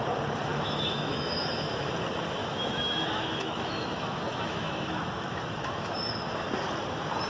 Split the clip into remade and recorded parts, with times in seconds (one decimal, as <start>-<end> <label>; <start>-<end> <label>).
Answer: 0.0-0.5 recorded; 0.5-1.9 remade; 1.9-2.4 recorded; 2.4-6.1 remade; 6.1-7.3 recorded

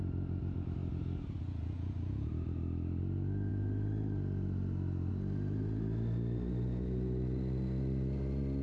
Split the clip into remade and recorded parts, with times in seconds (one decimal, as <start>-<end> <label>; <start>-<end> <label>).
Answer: 0.0-8.6 recorded

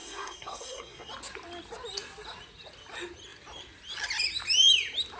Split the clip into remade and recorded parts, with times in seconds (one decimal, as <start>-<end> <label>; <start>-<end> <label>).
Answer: 0.0-1.1 remade; 1.1-5.2 recorded

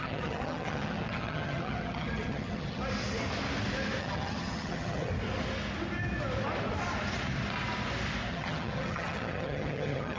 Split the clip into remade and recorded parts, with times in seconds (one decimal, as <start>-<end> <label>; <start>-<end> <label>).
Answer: 0.0-2.8 remade; 2.8-4.0 recorded; 4.0-5.1 remade; 5.1-8.3 recorded; 8.3-10.2 remade

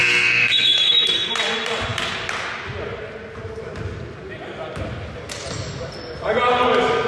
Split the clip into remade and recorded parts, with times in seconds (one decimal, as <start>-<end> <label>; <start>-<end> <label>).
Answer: 0.0-1.3 remade; 1.3-7.1 recorded